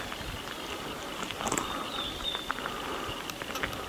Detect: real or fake real